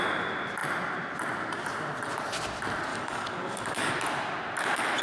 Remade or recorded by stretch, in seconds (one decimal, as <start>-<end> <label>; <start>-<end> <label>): 0.0-2.9 recorded; 2.9-3.9 remade; 3.9-5.0 recorded